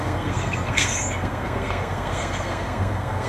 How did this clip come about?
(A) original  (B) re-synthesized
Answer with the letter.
B